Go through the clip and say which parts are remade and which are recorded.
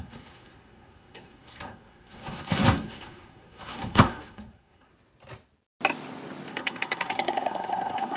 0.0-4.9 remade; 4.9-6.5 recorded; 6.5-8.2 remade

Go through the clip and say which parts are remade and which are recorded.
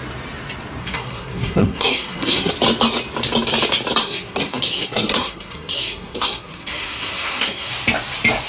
0.0-0.8 recorded; 0.8-2.5 remade; 2.5-4.0 recorded; 4.0-7.7 remade; 7.7-8.5 recorded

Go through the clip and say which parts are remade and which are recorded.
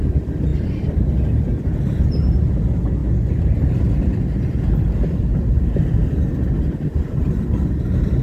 0.0-8.2 recorded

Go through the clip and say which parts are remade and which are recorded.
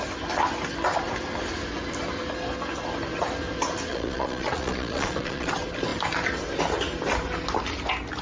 0.0-3.9 recorded; 3.9-5.5 remade; 5.5-8.2 recorded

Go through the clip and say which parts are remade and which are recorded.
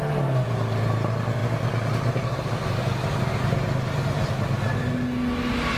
0.0-5.8 recorded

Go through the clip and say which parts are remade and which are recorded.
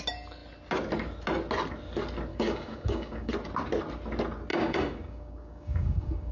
0.0-2.3 recorded; 2.3-3.3 remade; 3.3-4.5 recorded; 4.5-6.3 remade